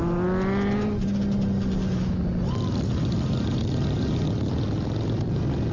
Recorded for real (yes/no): yes